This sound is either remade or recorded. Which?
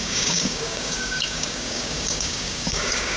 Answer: remade